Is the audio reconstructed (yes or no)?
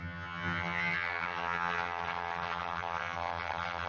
yes